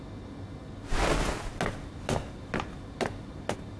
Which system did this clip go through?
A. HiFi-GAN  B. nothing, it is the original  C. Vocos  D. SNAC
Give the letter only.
B